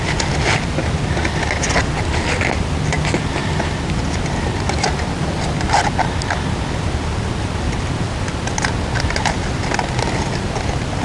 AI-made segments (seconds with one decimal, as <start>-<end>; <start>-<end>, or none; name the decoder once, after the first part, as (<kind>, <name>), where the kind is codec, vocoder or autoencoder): none